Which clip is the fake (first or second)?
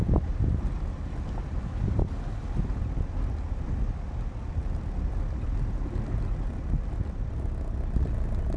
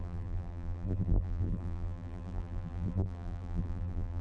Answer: second